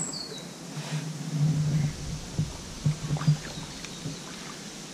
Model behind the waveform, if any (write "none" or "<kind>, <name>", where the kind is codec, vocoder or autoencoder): none